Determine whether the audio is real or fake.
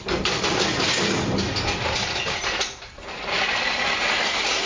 real